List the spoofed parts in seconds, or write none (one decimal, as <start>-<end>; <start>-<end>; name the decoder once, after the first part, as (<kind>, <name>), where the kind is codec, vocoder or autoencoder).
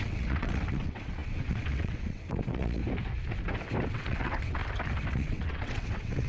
0.0-2.8 (vocoder, WaveNeXt); 3.9-4.6; 5.1-6.3